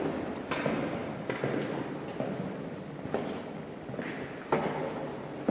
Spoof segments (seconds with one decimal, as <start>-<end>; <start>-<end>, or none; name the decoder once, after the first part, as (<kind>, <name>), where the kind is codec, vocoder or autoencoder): none